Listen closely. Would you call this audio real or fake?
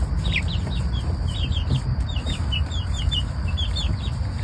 fake